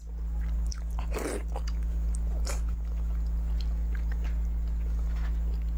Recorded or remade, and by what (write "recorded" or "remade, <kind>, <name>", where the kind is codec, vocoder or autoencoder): recorded